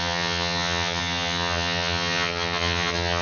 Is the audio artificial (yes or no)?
yes